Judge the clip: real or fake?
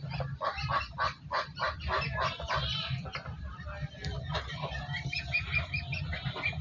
real